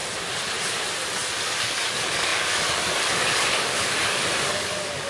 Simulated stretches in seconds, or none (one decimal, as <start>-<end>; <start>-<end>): 1.6-5.1